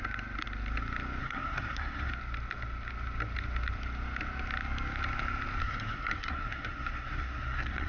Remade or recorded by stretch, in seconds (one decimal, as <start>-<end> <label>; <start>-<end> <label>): 0.0-1.2 recorded; 1.2-2.1 remade; 2.1-5.6 recorded; 5.6-7.9 remade